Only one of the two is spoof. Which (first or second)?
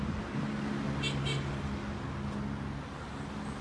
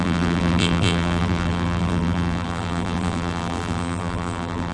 second